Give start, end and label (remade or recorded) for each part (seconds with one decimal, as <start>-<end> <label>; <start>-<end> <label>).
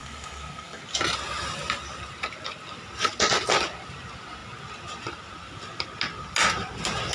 0.0-0.8 remade; 0.8-7.1 recorded